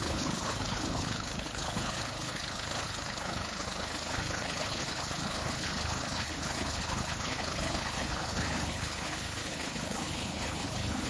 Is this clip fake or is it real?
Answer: fake